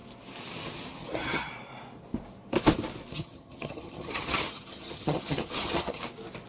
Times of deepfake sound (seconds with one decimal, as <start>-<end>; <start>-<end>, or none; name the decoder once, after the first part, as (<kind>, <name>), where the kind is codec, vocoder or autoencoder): 0.9-1.5 (vocoder, HiFi-GAN); 3.1-6.0